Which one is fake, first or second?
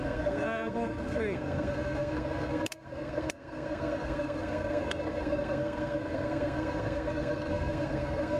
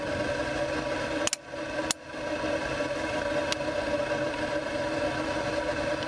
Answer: first